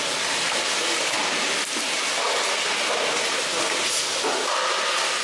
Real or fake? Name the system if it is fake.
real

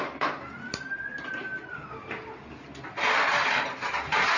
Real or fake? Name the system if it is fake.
real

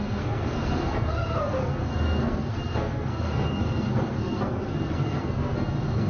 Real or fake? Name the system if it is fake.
fake, codec, SNAC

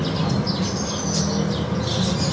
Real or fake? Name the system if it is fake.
real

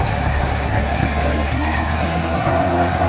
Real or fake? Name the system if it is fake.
fake, codec, SNAC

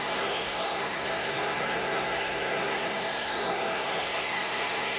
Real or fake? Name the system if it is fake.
fake, codec, SNAC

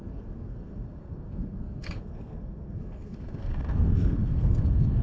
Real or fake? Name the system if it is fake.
fake, codec, SNAC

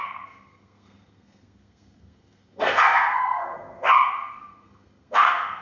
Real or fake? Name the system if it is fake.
fake, codec, SNAC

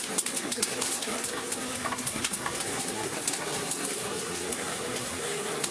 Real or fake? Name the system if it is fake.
fake, codec, SNAC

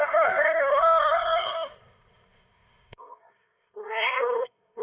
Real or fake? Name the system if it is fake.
fake, codec, SNAC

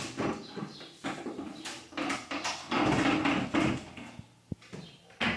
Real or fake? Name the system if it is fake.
real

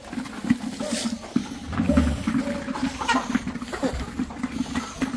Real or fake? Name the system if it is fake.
real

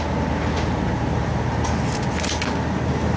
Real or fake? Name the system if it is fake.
real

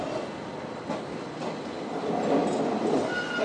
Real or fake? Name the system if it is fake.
real